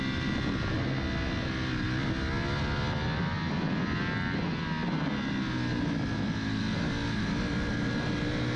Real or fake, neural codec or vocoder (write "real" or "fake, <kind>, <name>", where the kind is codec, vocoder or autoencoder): real